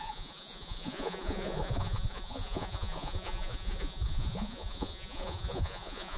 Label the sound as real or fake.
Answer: fake